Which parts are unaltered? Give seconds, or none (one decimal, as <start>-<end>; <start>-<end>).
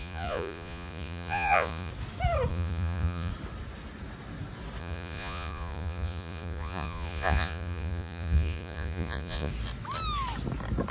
1.9-2.5; 3.3-4.8; 9.5-10.9